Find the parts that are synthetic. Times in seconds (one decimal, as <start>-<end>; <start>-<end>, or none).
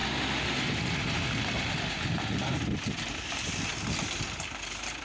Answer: none